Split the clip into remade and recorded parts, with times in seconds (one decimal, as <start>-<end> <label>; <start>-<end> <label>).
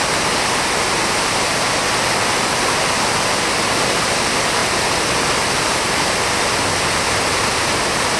0.0-4.6 recorded; 4.6-5.3 remade; 5.3-8.2 recorded